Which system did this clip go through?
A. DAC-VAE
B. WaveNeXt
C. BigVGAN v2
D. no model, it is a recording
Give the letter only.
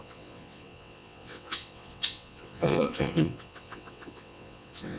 B